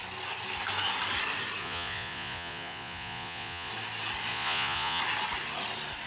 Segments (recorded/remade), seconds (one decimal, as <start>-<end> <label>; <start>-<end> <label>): 0.0-1.6 recorded; 1.6-3.7 remade; 3.7-4.3 recorded; 4.3-5.0 remade; 5.0-6.1 recorded